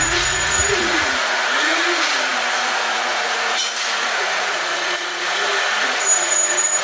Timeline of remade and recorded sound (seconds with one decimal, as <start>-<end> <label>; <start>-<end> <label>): 0.0-6.8 remade